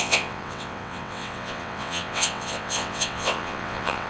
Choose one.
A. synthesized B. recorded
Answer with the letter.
A